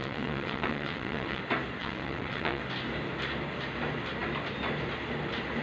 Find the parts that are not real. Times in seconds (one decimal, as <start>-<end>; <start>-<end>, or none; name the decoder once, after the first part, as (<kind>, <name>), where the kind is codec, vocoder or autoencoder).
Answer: 0.0-1.4 (vocoder, WaveNeXt); 1.8-2.6